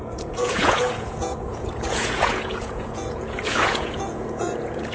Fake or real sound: fake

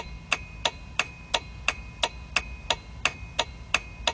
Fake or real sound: real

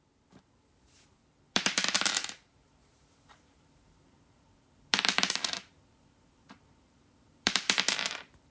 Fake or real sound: fake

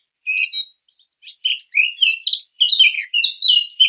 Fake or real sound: real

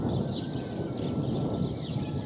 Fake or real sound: real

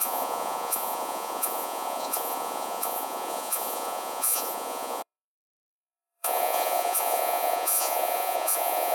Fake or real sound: fake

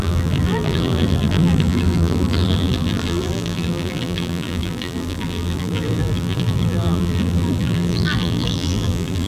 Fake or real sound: fake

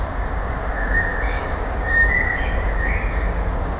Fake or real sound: fake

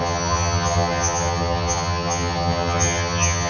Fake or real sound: fake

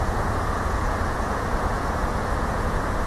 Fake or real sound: fake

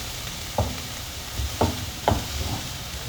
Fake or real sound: fake